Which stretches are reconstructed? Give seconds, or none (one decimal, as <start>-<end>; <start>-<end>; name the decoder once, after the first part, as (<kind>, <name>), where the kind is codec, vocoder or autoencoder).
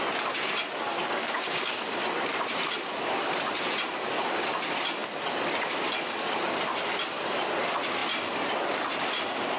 0.9-1.8 (codec, DAC)